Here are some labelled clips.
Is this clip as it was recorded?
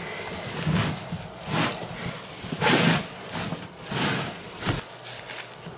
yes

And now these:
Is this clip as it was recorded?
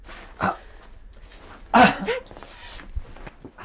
yes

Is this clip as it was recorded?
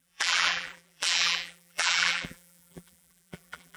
no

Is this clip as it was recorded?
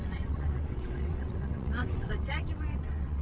no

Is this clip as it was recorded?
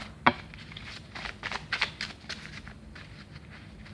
yes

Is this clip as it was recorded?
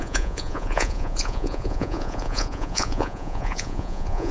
no